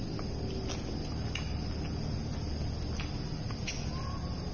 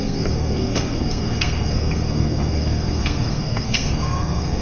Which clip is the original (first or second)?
first